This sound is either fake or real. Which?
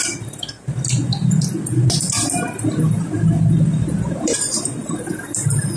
real